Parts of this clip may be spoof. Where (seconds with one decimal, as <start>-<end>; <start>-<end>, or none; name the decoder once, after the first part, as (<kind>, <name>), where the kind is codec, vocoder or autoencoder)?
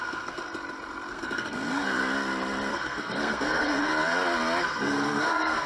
0.0-0.4 (codec, SNAC); 1.1-2.0; 2.7-3.9; 4.6-5.7